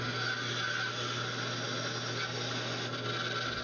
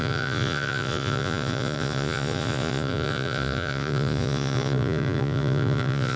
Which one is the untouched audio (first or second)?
first